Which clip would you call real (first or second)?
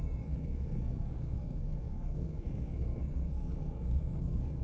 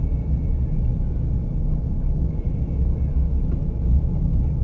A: second